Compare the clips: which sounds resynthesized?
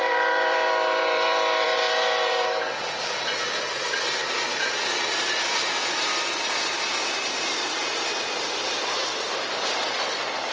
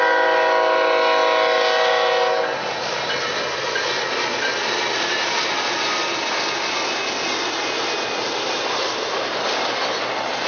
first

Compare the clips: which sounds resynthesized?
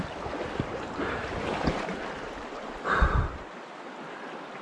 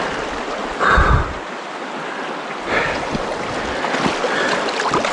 first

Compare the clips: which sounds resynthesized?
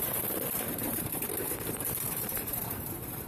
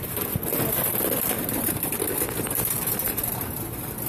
first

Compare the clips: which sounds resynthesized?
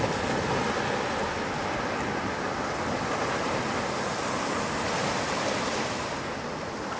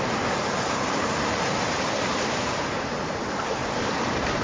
second